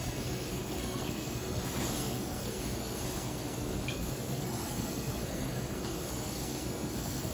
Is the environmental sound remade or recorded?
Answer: remade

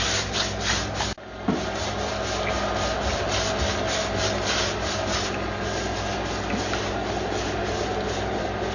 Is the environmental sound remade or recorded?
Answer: recorded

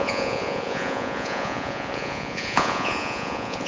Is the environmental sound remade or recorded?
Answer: remade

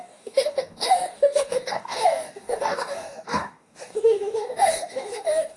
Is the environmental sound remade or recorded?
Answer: remade